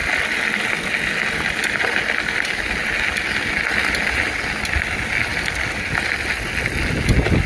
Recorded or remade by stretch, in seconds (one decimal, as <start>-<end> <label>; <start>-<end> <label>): 0.0-7.5 recorded